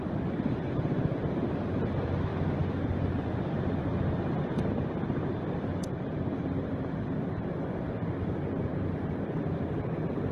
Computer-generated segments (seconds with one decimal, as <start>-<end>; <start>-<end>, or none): 0.0-10.3

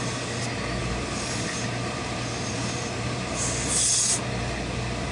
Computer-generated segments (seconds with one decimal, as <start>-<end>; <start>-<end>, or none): 0.8-3.9

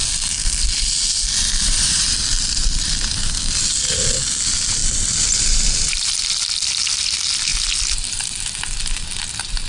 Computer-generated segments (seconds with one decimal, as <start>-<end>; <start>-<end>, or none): 4.8-6.3

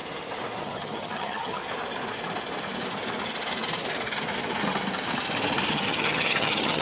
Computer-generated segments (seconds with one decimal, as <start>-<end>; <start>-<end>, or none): 0.6-1.6; 5.7-6.8